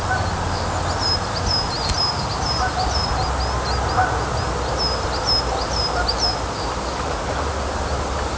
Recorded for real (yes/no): yes